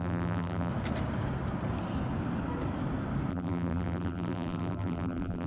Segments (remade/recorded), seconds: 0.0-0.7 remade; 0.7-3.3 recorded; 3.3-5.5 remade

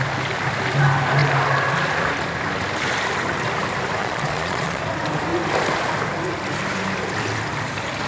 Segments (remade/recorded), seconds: 0.0-4.0 recorded; 4.0-4.8 remade; 4.8-8.1 recorded

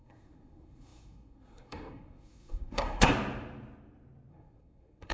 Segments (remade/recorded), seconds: 0.0-3.1 remade; 3.1-4.3 recorded; 4.3-5.1 remade

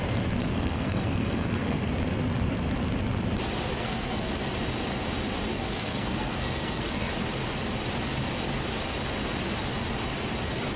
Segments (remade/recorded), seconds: 0.0-0.4 recorded; 0.4-1.9 remade; 1.9-3.7 recorded; 3.7-4.3 remade; 4.3-5.5 recorded; 5.5-7.1 remade; 7.1-10.8 recorded

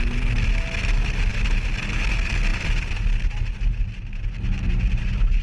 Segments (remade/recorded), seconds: 0.0-5.4 recorded

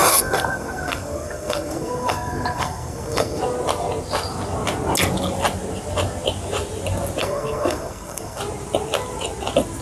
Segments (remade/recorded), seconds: 0.0-3.4 remade; 3.4-7.2 recorded; 7.2-8.4 remade; 8.4-9.8 recorded